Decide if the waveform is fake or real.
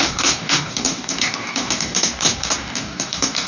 fake